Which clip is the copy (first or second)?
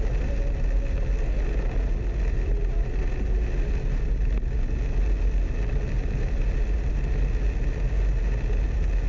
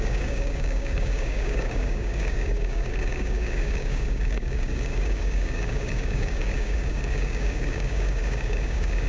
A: second